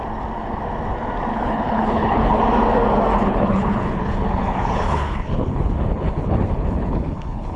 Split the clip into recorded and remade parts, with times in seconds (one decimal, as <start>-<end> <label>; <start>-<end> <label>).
0.0-1.3 recorded; 1.3-2.4 remade; 2.4-3.2 recorded; 3.2-7.6 remade